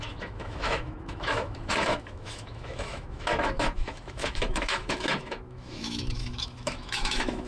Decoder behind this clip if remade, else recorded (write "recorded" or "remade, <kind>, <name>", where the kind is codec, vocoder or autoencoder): remade, autoencoder, DAC-VAE